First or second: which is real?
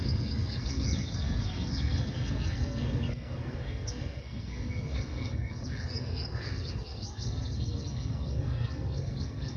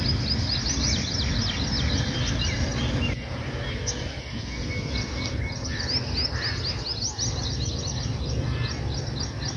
second